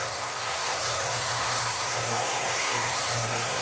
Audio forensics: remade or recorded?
remade